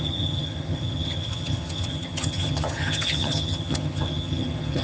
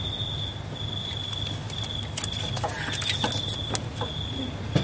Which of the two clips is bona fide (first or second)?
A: second